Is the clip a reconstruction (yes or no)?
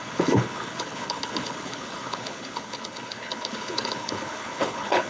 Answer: yes